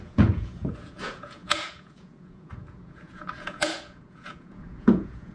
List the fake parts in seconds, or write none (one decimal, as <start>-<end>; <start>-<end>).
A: 0.0-5.3